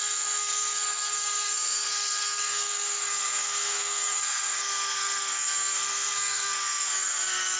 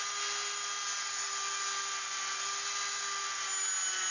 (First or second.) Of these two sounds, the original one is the second